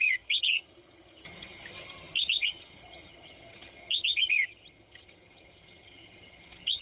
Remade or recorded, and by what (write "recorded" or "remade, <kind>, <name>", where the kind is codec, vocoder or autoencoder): remade, vocoder, HiFi-GAN